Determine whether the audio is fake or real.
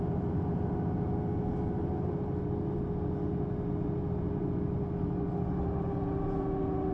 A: real